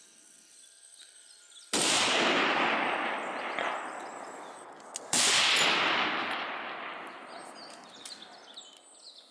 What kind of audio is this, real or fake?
real